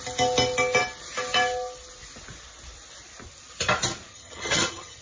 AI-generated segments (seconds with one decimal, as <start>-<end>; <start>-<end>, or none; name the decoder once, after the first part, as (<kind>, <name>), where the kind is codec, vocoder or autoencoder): 4.1-5.0 (vocoder, HiFi-GAN)